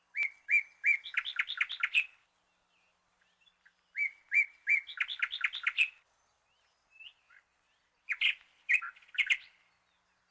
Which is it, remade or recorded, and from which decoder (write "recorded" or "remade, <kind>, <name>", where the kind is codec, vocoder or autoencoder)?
recorded